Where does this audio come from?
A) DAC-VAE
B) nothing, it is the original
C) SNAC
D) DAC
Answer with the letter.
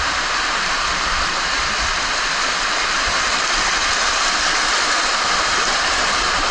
B